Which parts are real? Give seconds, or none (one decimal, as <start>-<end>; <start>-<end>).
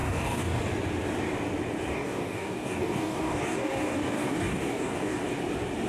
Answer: 0.6-1.9; 5.4-5.9